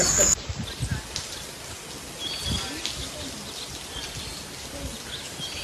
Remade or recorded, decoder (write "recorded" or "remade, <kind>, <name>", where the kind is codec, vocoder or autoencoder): recorded